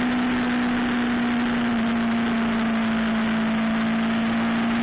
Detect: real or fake real